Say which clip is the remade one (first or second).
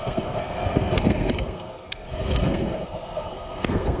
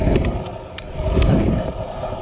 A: first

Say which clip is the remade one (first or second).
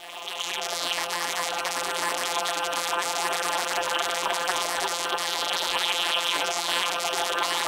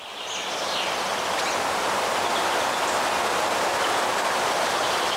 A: first